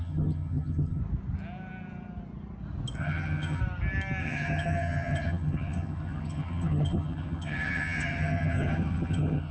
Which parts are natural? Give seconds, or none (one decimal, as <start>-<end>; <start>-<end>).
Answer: 1.0-3.0; 3.6-4.2